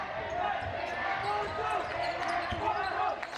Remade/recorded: recorded